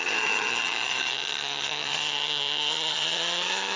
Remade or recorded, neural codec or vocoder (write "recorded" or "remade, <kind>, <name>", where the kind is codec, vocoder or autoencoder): remade, vocoder, HiFi-GAN